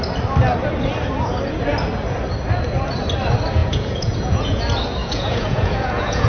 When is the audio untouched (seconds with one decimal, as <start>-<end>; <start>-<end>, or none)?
0.0-3.6; 4.6-5.0